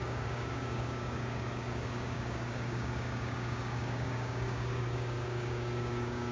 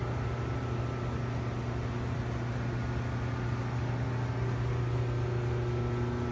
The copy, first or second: first